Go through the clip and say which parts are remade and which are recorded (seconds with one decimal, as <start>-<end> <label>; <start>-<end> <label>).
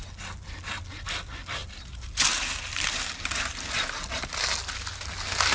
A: 0.0-5.5 recorded